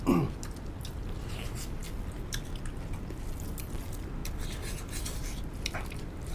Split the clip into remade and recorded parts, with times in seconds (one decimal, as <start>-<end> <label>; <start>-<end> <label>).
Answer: 0.0-6.3 recorded